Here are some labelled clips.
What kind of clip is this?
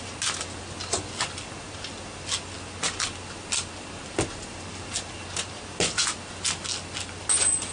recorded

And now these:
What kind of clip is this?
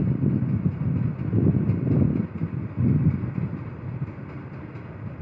recorded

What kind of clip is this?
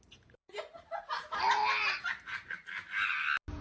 recorded